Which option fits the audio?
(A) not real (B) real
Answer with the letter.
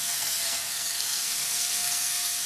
A